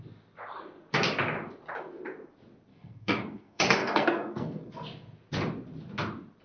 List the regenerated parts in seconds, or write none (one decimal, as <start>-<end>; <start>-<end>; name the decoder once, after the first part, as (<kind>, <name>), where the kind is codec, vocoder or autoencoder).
2.7-4.7 (codec, SNAC)